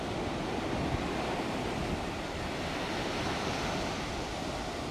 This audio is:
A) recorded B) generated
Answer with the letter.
A